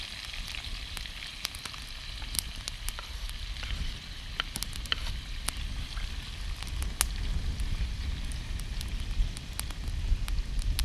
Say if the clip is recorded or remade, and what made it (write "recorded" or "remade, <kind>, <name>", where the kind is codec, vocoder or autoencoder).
recorded